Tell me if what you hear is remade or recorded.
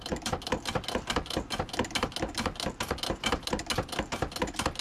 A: recorded